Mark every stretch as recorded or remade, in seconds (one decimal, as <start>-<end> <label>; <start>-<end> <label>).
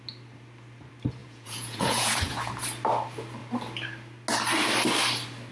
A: 0.0-1.2 recorded; 1.2-2.5 remade; 2.5-5.5 recorded